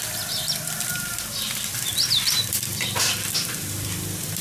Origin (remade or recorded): remade